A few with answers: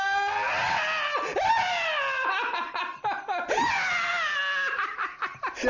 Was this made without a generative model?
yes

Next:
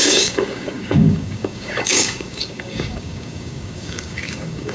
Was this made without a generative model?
no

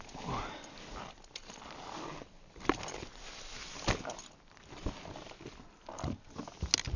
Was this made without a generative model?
yes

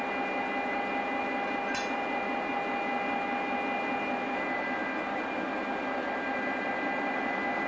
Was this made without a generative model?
yes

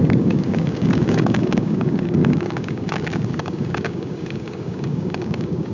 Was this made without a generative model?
no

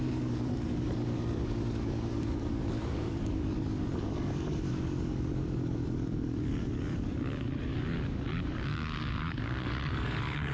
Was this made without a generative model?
no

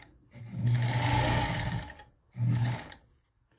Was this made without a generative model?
no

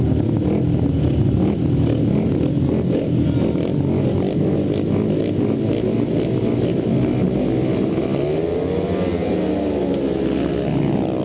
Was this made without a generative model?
yes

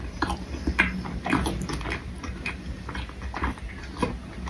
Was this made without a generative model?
yes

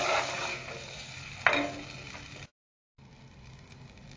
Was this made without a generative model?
yes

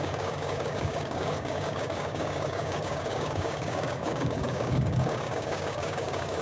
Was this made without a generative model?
no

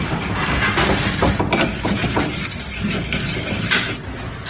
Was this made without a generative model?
yes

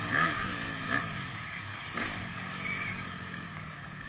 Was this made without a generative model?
no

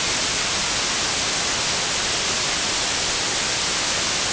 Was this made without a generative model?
yes